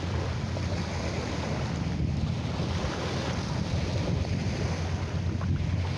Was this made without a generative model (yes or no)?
yes